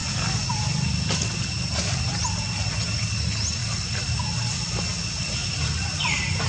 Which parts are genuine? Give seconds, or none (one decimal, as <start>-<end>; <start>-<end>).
0.0-3.6; 4.2-5.4